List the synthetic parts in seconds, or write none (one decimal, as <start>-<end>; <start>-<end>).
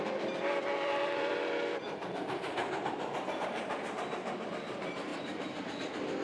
0.0-6.2